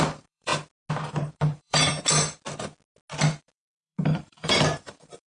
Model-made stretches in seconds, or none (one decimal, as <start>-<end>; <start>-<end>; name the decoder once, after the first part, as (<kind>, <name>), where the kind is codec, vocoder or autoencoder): 0.0-0.5 (vocoder, BigVGAN v2); 1.3-1.9; 3.3-5.3